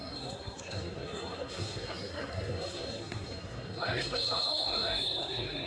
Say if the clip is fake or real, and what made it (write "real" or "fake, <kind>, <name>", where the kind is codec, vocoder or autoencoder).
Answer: fake, codec, SNAC